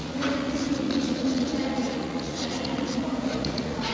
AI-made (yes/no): yes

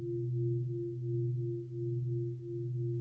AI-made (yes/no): no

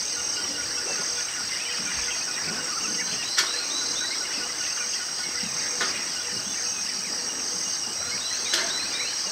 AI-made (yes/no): no